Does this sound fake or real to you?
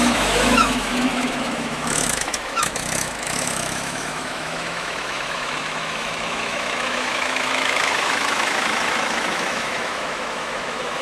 fake